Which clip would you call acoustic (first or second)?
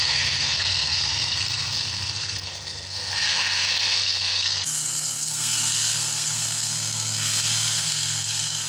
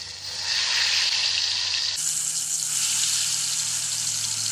second